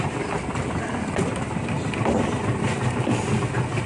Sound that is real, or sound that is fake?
real